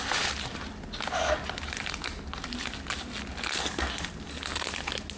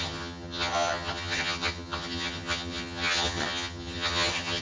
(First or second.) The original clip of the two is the first